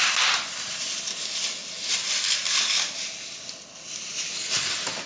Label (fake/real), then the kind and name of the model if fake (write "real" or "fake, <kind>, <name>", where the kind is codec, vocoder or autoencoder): real